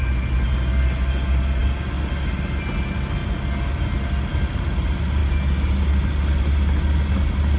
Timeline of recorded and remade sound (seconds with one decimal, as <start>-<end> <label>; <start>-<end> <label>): 0.0-7.6 recorded